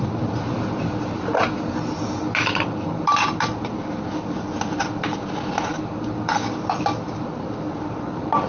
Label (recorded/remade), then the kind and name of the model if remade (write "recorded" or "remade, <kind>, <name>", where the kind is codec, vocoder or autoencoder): recorded